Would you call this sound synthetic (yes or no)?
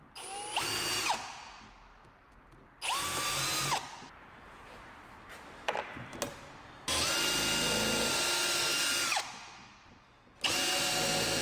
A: no